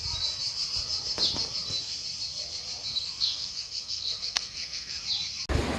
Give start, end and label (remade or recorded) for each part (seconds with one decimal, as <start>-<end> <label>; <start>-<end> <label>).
0.0-2.9 recorded; 2.9-5.0 remade; 5.0-5.8 recorded